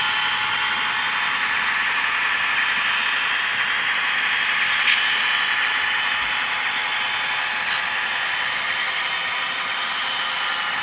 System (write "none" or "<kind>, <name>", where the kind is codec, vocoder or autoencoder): none